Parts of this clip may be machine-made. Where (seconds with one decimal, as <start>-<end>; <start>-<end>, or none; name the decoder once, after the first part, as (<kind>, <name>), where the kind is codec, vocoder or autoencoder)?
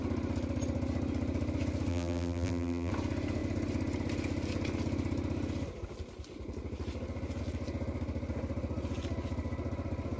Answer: 1.9-2.9 (vocoder, BigVGAN v2)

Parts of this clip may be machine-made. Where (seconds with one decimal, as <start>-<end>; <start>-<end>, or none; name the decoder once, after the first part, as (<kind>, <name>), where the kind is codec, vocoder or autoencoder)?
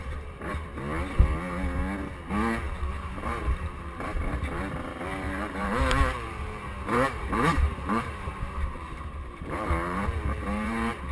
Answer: 0.0-0.5 (vocoder, BigVGAN v2); 2.9-11.1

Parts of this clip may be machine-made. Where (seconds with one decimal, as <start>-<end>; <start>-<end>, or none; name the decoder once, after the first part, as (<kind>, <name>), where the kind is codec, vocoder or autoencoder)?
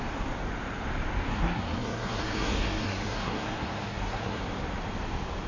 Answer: 1.3-4.4 (codec, SNAC)